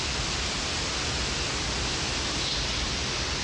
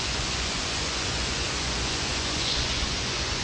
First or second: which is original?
first